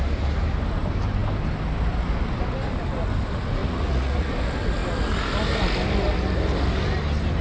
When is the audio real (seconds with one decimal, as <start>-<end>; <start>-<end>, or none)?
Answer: 0.0-3.6; 4.3-7.4